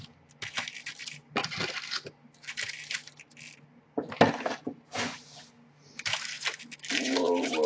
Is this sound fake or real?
real